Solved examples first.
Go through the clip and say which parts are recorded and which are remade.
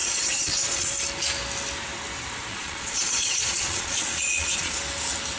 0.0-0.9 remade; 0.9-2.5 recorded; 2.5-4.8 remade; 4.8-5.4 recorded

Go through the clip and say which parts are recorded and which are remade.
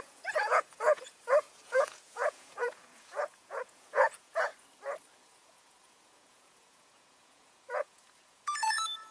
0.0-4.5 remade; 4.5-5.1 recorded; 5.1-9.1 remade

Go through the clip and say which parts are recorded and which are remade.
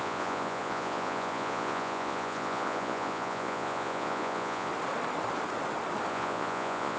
0.0-4.7 remade; 4.7-6.1 recorded; 6.1-7.0 remade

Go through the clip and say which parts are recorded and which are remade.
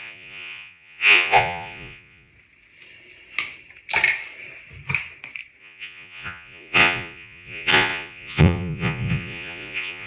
0.0-2.3 remade; 2.3-5.6 recorded; 5.6-10.1 remade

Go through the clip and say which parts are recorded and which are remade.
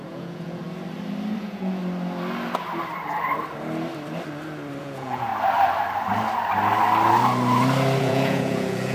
0.0-0.6 remade; 0.6-1.4 recorded; 1.4-1.8 remade; 1.8-4.8 recorded; 4.8-5.3 remade; 5.3-8.0 recorded; 8.0-8.9 remade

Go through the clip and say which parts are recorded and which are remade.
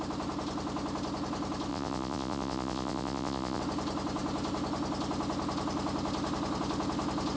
0.0-1.7 recorded; 1.7-3.6 remade; 3.6-7.4 recorded